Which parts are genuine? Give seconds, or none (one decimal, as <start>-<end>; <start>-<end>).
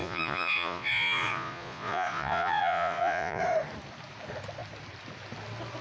3.4-5.8